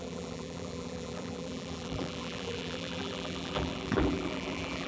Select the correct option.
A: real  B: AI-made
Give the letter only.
B